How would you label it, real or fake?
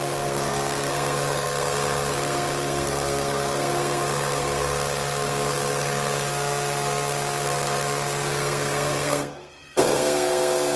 fake